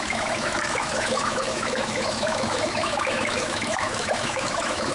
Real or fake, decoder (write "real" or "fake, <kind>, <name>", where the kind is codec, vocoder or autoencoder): fake, autoencoder, DAC-VAE